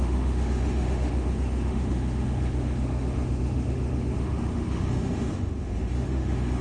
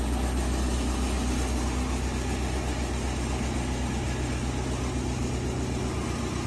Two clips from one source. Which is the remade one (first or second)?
first